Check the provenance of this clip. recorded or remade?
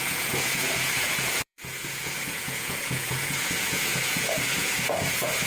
remade